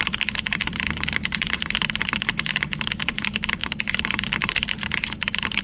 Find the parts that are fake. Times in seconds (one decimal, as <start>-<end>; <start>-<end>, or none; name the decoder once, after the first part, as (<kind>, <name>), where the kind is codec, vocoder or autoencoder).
none